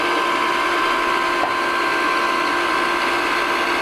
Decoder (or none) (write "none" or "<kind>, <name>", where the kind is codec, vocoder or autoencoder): none